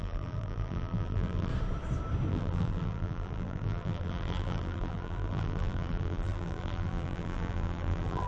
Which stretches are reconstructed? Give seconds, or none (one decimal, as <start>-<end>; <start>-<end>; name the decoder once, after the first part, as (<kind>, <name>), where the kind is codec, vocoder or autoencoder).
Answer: 0.0-1.5 (vocoder, BigVGAN v2); 2.3-8.3